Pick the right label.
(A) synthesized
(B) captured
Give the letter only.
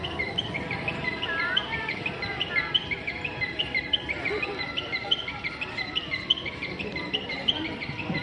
A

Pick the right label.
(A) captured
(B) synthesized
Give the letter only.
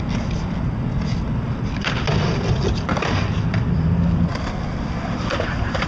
A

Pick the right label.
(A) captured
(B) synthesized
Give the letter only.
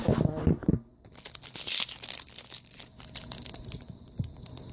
A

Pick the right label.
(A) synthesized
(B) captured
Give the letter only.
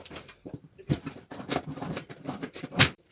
A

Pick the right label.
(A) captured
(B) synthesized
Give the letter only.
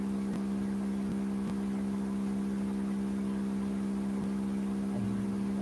A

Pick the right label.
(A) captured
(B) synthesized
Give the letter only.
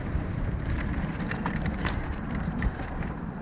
B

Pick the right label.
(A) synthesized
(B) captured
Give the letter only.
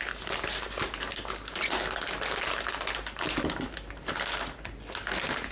B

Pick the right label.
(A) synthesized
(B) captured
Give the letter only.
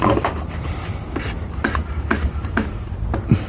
B